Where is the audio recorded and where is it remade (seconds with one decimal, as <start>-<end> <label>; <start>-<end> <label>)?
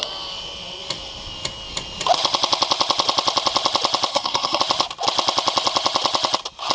0.0-4.1 recorded; 4.1-4.6 remade; 4.6-6.7 recorded